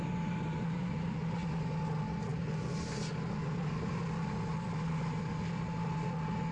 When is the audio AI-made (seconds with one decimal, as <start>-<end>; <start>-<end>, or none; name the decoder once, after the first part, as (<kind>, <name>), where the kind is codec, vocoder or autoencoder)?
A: none

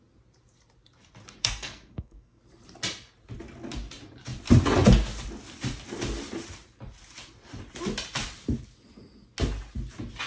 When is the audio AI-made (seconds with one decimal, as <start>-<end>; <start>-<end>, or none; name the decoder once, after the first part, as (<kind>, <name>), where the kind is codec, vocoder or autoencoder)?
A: 1.4-2.4 (codec, SNAC)

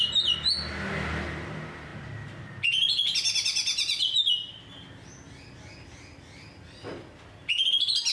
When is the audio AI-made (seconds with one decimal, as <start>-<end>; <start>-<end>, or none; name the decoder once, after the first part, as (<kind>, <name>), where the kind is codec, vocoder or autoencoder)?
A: none